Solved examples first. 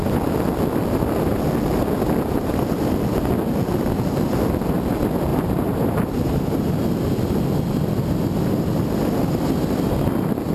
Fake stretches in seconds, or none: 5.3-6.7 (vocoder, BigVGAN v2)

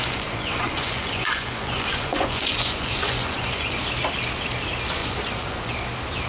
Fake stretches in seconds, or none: 0.0-3.8 (vocoder, Vocos); 5.0-5.7

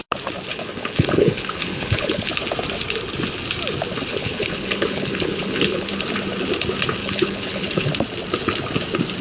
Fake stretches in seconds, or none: 0.5-2.3 (codec, HILCodec); 4.1-5.9; 7.0-7.9

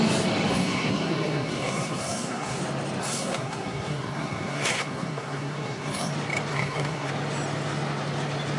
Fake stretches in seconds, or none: 0.5-2.6 (codec, SNAC); 3.0-6.1; 6.5-7.1

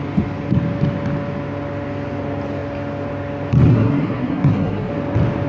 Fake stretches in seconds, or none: 3.7-4.9 (codec, SNAC)

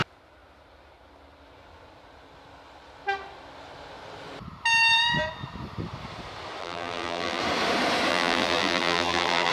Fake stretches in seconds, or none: 6.6-7.4 (vocoder, BigVGAN v2); 8.1-9.5

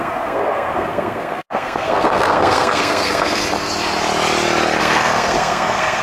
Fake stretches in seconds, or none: 0.0-3.4 (codec, SNAC); 4.8-6.0